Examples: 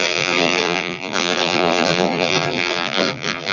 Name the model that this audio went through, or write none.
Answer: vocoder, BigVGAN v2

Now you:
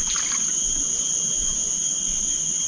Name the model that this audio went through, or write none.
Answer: none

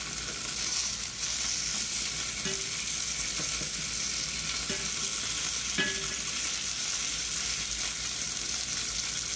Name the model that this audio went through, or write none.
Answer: none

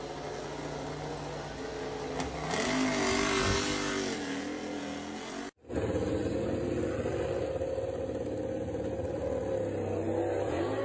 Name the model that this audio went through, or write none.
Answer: none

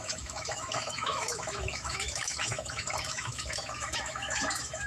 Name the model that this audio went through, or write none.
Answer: autoencoder, DAC-VAE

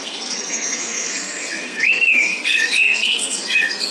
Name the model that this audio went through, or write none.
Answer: codec, SNAC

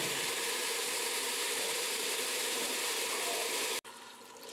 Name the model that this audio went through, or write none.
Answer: vocoder, BigVGAN v2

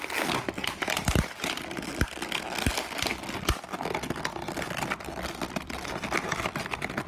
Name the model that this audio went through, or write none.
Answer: none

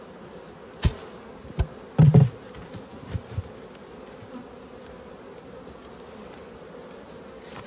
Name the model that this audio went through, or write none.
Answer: none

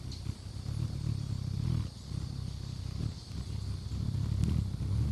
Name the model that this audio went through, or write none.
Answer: none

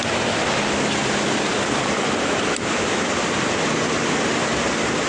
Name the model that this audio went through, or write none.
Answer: none